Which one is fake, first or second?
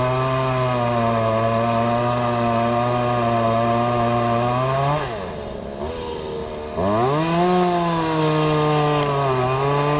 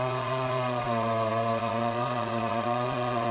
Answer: second